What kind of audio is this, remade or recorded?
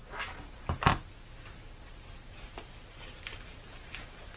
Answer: recorded